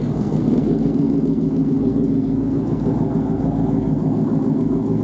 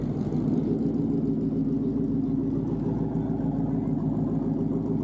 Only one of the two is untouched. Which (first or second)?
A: second